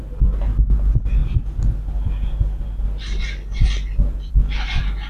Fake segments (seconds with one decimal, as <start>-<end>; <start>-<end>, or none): none